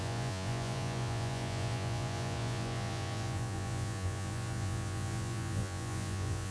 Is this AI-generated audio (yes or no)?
yes